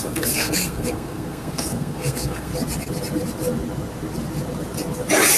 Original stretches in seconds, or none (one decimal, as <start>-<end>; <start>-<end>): 2.5-5.4